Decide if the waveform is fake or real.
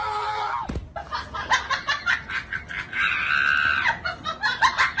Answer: real